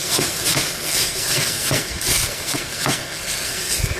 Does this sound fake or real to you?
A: fake